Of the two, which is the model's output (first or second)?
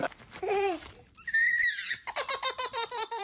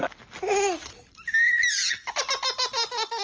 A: first